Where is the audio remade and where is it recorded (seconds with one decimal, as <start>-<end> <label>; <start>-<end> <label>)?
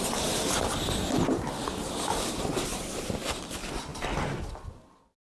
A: 0.0-5.3 recorded